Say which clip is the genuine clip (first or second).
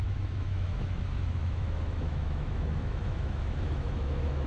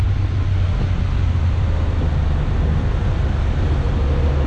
second